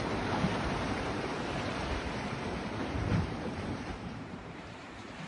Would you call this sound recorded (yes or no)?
no